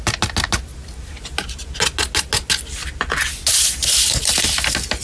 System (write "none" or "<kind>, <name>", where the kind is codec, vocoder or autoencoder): none